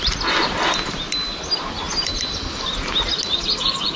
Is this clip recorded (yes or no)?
yes